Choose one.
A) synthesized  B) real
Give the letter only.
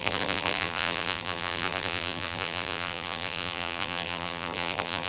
A